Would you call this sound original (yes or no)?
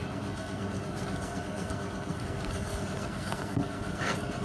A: no